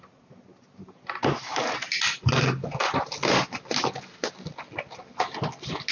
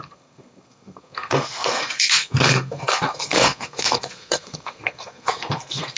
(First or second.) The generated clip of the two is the second